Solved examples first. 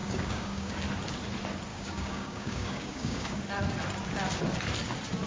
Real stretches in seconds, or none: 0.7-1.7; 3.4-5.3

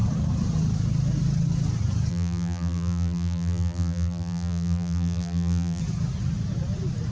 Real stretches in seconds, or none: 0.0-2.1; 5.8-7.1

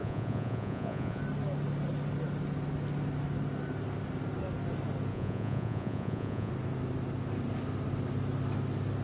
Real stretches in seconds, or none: 1.2-5.1; 6.5-9.0

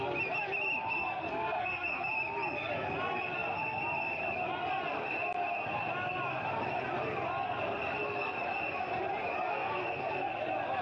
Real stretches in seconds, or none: 0.0-1.0; 2.1-9.5; 10.1-10.8

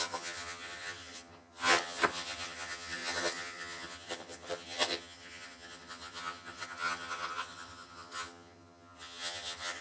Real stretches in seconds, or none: none

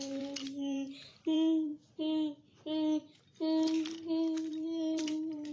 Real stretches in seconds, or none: 1.7-4.5